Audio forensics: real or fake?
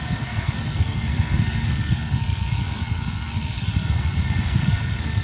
fake